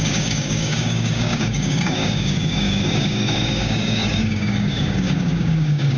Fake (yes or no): yes